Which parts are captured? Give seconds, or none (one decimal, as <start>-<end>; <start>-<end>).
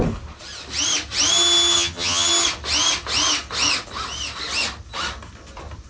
0.0-1.7; 2.3-5.9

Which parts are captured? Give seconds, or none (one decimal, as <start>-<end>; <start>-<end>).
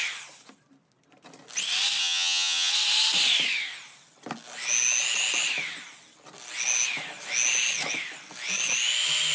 0.0-2.0; 2.7-9.3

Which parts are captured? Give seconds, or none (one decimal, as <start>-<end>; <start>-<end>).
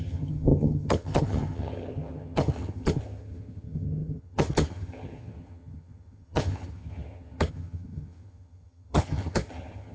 none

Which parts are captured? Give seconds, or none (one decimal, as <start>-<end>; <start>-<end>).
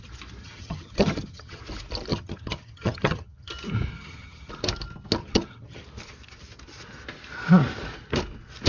0.0-0.4; 1.6-2.1; 3.5-3.9; 4.5-5.2; 5.8-8.7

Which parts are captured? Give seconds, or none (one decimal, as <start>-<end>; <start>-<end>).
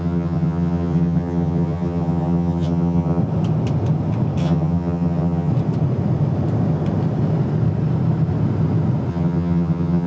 3.2-4.4; 5.5-9.1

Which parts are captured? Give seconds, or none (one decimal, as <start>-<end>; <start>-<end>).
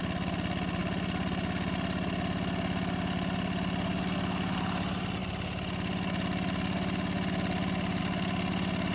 0.0-8.9